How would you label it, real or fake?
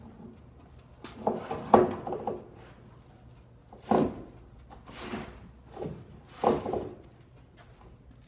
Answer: real